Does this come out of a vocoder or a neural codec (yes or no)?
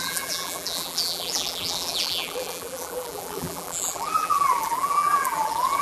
yes